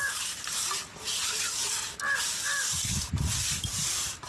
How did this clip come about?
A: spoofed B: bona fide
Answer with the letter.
B